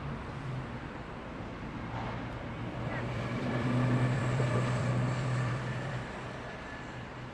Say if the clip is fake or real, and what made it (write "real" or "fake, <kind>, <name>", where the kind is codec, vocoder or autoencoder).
fake, vocoder, BigVGAN v2